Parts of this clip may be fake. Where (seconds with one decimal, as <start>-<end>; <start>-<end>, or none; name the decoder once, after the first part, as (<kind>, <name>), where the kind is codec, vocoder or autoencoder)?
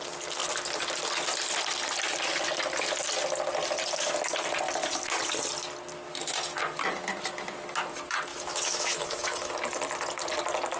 8.3-9.5 (autoencoder, DAC-VAE)